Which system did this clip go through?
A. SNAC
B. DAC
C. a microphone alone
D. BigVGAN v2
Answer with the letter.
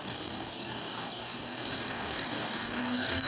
B